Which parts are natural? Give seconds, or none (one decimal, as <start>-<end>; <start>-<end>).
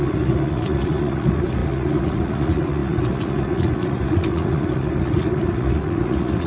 none